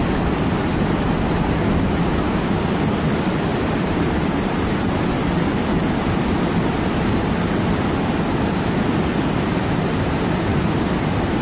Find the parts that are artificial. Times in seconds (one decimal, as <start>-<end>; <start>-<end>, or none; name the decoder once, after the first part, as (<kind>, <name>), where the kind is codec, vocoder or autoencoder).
3.5-4.9 (vocoder, BigVGAN v2)